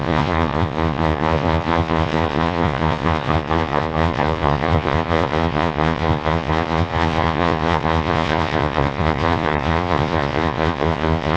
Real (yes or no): no